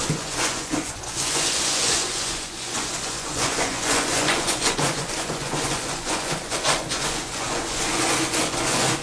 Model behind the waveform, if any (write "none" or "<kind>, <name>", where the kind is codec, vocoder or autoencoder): vocoder, Vocos